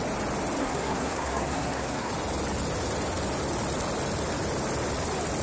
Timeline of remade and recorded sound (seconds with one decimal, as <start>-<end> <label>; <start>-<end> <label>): 0.0-0.6 recorded; 0.6-2.1 remade; 2.1-5.4 recorded

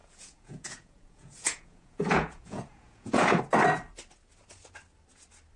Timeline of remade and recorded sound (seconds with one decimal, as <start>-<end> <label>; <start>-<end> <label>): 0.0-3.4 remade; 3.4-5.6 recorded

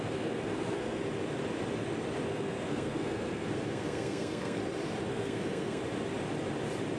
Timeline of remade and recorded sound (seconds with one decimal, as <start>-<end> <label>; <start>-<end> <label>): 0.0-1.0 remade; 1.0-2.3 recorded; 2.3-4.6 remade; 4.6-5.1 recorded; 5.1-5.8 remade; 5.8-7.0 recorded

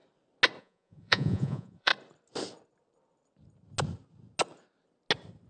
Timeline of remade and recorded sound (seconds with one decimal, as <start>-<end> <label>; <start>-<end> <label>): 0.0-0.6 recorded; 0.6-1.9 remade; 1.9-5.5 recorded

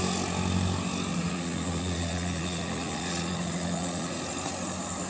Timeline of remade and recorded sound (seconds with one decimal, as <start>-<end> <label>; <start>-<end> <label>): 0.0-1.1 recorded; 1.1-4.2 remade; 4.2-5.1 recorded

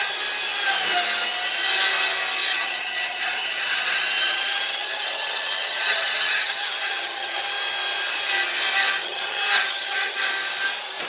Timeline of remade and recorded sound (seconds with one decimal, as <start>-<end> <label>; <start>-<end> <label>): 0.0-2.5 recorded; 2.5-7.4 remade; 7.4-9.0 recorded; 9.0-10.2 remade; 10.2-11.1 recorded

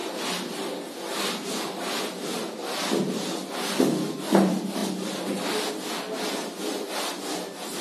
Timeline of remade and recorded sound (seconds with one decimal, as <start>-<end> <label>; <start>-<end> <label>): 0.0-7.8 recorded